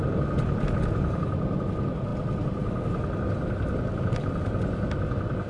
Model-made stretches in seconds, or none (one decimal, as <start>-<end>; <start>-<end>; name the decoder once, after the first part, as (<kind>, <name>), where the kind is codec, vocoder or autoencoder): none